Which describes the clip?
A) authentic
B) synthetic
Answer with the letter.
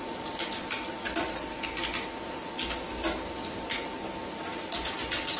A